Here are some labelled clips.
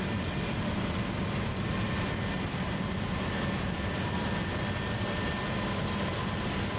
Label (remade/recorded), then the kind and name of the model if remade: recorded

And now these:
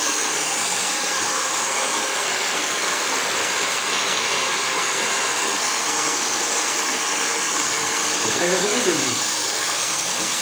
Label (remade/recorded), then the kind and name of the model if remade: remade, codec, SNAC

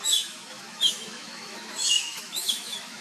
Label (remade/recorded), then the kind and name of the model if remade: remade, autoencoder, DAC-VAE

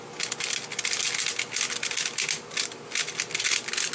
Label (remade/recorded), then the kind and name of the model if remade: recorded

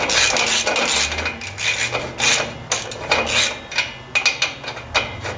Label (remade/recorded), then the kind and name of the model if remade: recorded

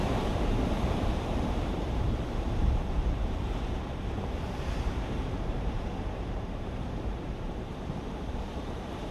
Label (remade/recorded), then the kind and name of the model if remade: remade, vocoder, BigVGAN v2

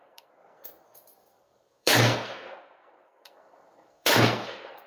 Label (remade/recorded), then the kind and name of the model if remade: remade, codec, SNAC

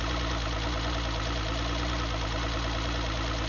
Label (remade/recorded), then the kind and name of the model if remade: recorded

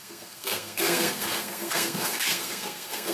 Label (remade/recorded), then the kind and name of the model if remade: remade, codec, SNAC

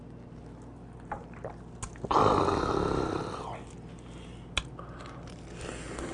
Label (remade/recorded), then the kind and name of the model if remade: recorded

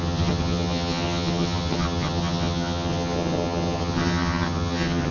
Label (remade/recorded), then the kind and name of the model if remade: remade, vocoder, HiFi-GAN